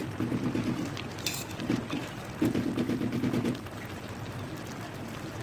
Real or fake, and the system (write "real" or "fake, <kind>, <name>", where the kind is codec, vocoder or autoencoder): real